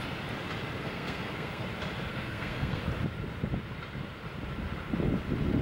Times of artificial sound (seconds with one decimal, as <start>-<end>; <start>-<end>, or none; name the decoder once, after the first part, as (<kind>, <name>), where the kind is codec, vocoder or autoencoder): 0.8-1.6 (codec, SNAC); 2.1-2.8